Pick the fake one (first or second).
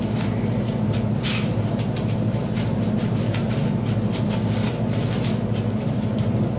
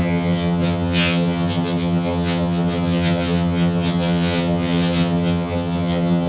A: second